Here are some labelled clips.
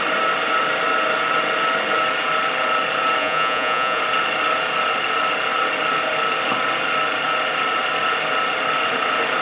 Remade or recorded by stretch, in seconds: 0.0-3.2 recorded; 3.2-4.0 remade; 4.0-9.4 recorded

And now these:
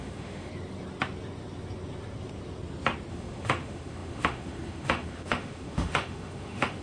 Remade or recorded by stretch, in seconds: 0.0-0.5 remade; 0.5-3.1 recorded; 3.1-6.8 remade

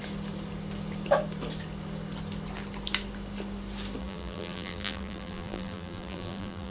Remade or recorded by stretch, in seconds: 0.0-4.0 recorded; 4.0-6.7 remade

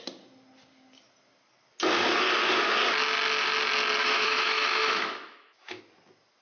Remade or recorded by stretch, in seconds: 0.0-4.0 recorded; 4.0-5.8 remade; 5.8-6.4 recorded

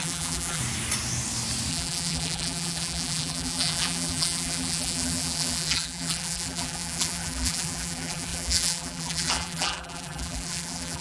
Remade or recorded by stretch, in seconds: 0.0-0.6 remade; 0.6-1.7 recorded; 1.7-11.0 remade

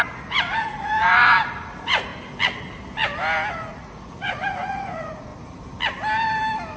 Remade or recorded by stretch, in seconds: 0.0-2.1 remade; 2.1-3.5 recorded; 3.5-5.3 remade; 5.3-6.8 recorded